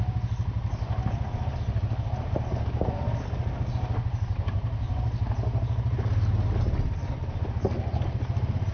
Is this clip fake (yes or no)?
no